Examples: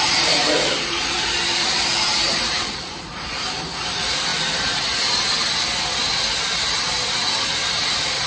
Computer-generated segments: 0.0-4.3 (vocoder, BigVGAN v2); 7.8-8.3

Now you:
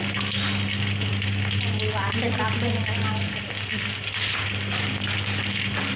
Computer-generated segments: none

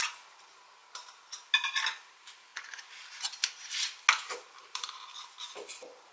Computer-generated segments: 0.0-0.8 (vocoder, BigVGAN v2); 1.6-2.5; 4.1-6.1

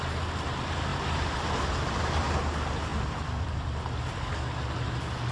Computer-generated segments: 0.9-1.5 (vocoder, BigVGAN v2)